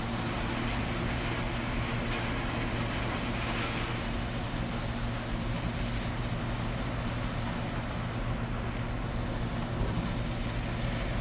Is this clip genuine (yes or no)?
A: yes